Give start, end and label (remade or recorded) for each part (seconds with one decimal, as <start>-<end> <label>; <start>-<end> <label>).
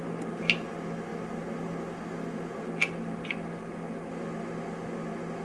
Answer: 0.0-5.4 recorded